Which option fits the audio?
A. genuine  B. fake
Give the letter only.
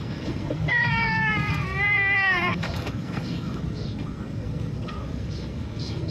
B